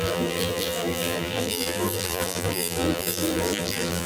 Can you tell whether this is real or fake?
fake